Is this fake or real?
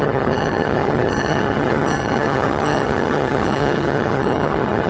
fake